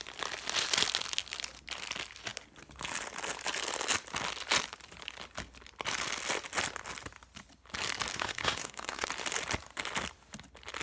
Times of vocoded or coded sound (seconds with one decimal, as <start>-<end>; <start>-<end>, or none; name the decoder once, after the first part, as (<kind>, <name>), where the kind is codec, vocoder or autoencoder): 8.1-9.1 (codec, SNAC)